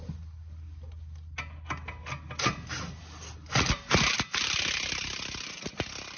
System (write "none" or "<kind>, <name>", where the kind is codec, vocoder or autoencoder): none